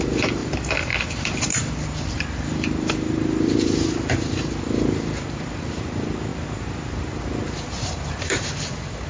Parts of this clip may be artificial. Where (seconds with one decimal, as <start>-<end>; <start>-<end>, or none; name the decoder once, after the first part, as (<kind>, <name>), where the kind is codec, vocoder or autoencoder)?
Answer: 0.0-9.1 (vocoder, BigVGAN v2)